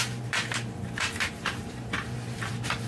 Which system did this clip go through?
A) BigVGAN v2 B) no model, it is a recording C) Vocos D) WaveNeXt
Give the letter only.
A